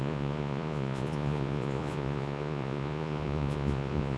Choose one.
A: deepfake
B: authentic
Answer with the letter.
A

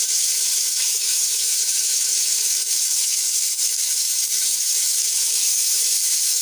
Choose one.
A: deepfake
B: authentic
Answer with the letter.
A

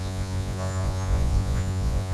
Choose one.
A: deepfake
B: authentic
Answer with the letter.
A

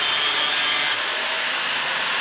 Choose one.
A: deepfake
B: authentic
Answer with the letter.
B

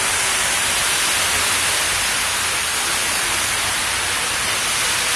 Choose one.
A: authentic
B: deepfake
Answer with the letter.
A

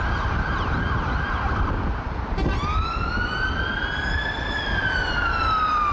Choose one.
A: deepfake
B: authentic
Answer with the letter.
A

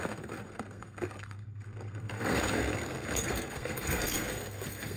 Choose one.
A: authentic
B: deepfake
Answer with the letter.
B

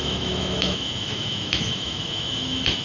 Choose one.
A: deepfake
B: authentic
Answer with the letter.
A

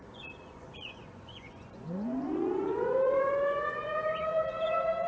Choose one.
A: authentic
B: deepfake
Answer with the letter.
B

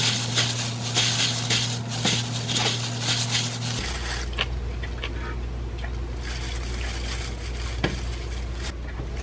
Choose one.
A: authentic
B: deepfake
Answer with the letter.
A